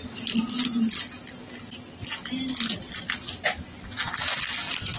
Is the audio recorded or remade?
recorded